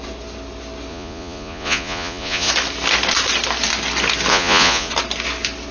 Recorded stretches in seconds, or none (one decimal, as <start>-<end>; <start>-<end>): 0.0-0.9; 2.5-4.3; 4.9-5.7